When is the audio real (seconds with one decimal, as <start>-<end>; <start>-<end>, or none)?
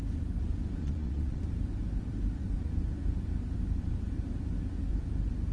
0.0-0.8; 1.4-5.5